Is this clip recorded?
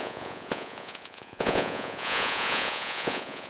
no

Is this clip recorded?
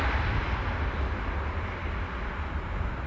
yes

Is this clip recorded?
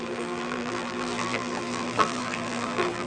no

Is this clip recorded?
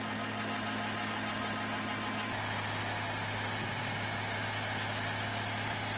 yes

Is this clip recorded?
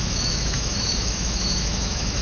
no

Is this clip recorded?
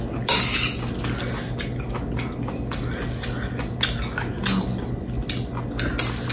yes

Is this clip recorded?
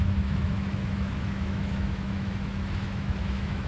no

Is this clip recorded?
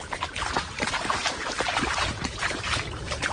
no